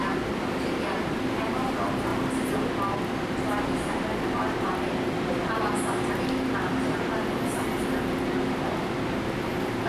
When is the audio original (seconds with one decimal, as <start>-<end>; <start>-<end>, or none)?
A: 0.0-9.9